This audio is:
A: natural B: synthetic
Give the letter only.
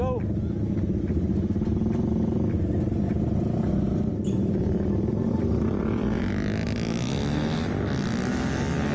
A